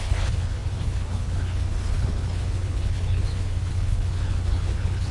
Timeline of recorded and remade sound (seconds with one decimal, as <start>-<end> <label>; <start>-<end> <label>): 0.0-5.1 remade